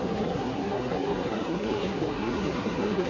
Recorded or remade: remade